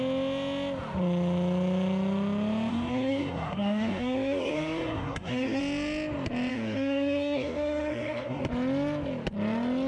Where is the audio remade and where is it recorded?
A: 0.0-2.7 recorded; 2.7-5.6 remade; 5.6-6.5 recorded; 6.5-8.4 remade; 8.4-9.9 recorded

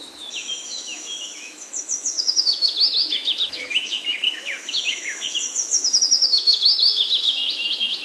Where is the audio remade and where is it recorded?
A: 0.0-8.0 remade

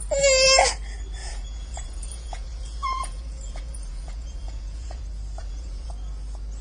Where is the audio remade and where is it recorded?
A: 0.0-1.2 recorded; 1.2-5.0 remade; 5.0-5.4 recorded; 5.4-5.9 remade; 5.9-6.6 recorded

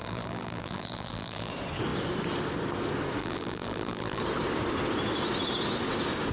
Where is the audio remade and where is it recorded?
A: 0.0-1.5 remade; 1.5-3.2 recorded; 3.2-4.2 remade; 4.2-6.3 recorded

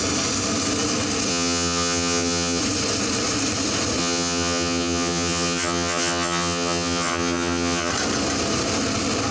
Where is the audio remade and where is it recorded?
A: 0.0-1.3 recorded; 1.3-2.6 remade; 2.6-4.0 recorded; 4.0-7.9 remade; 7.9-9.3 recorded

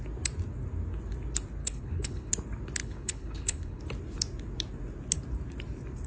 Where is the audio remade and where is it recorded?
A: 0.0-1.6 recorded; 1.6-2.3 remade; 2.3-2.8 recorded; 2.8-3.8 remade; 3.8-6.1 recorded